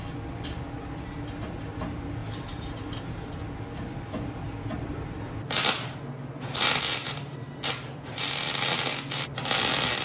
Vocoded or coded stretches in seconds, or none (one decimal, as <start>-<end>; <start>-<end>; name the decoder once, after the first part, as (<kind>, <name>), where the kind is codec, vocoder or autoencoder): 2.2-3.4 (vocoder, BigVGAN v2); 7.0-8.3